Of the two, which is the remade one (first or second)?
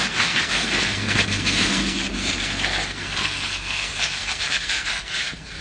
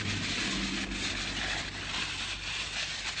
first